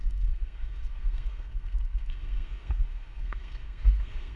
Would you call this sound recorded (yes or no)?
no